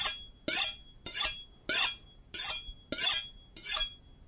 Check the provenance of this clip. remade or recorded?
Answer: recorded